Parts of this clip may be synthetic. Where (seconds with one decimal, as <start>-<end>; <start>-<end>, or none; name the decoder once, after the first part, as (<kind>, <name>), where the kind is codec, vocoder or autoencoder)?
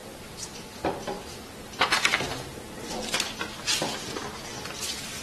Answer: 0.0-3.1 (vocoder, BigVGAN v2); 4.5-5.2